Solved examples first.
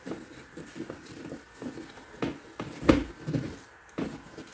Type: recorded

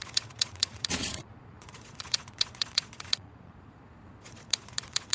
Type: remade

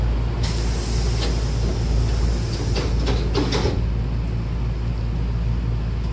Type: recorded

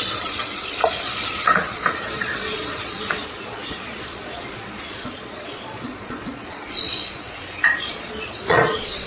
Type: remade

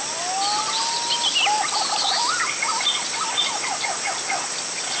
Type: recorded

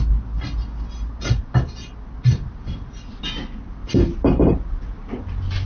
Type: recorded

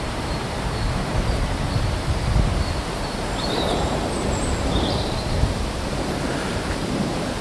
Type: remade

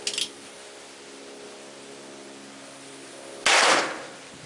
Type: recorded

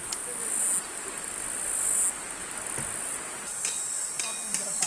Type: recorded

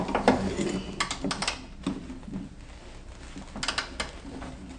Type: recorded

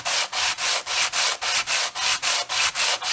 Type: recorded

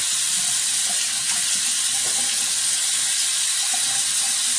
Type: recorded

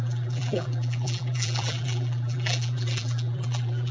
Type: remade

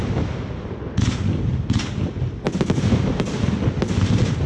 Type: recorded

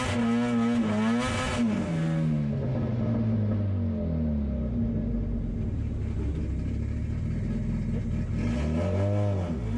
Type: recorded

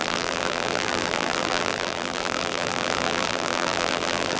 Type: remade